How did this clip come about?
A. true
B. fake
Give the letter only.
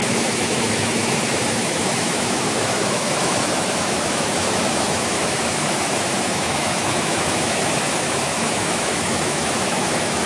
B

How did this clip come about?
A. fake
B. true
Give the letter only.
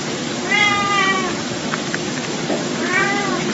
A